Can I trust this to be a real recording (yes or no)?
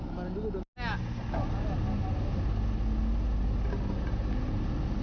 yes